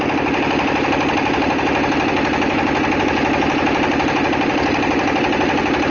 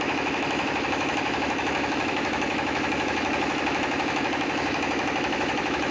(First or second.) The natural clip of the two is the first